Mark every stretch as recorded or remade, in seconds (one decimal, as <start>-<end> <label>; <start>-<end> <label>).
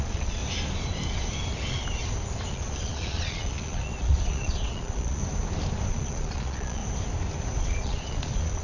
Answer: 0.0-0.4 remade; 0.4-2.5 recorded; 2.5-5.2 remade; 5.2-5.9 recorded; 5.9-6.8 remade; 6.8-7.6 recorded; 7.6-8.6 remade